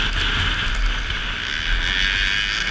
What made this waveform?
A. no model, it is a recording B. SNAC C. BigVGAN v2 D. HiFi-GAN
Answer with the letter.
A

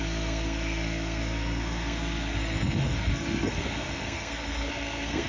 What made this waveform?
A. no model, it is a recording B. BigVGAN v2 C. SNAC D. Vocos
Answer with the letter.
C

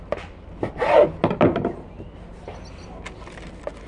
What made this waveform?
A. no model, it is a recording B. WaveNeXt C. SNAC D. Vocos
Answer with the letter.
A